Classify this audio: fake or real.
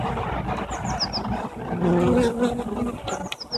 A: real